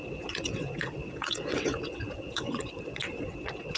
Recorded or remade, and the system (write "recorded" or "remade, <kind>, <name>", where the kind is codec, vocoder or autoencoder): remade, vocoder, WaveNeXt